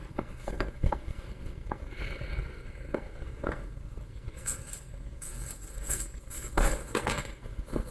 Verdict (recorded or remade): remade